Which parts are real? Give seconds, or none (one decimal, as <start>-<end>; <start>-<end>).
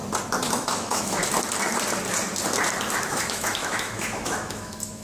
0.0-0.5; 1.2-3.0